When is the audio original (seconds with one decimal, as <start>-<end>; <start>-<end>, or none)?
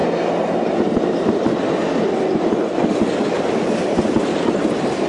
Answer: 0.0-5.1